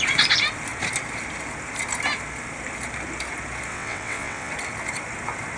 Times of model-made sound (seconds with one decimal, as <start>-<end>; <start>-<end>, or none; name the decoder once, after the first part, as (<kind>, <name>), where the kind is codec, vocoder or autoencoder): 3.7-4.5 (vocoder, WaveNeXt)